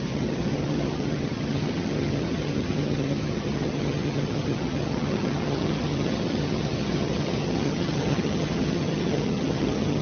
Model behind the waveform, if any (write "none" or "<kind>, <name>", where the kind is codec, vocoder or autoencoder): vocoder, HiFi-GAN